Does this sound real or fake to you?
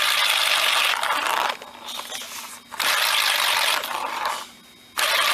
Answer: real